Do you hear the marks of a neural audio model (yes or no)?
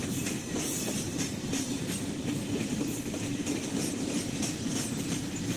yes